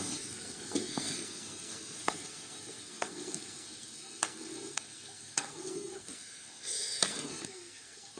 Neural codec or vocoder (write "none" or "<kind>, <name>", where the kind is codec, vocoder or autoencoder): codec, SNAC